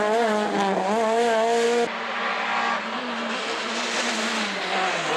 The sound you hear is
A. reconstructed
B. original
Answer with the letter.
B